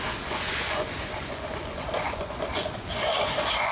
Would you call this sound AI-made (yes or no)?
yes